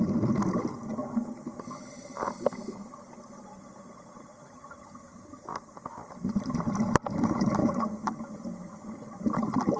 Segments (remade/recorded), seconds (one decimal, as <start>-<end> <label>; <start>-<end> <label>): 0.0-7.6 recorded; 7.6-8.3 remade; 8.3-9.8 recorded